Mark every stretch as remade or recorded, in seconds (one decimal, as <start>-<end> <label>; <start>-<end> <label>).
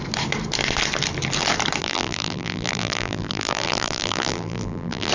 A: 0.0-1.8 recorded; 1.8-5.1 remade